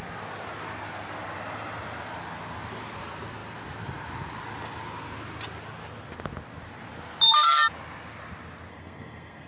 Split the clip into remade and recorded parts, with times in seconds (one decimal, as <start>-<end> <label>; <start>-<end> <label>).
0.0-8.7 recorded; 8.7-9.5 remade